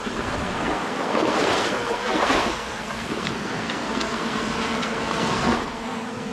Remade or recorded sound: remade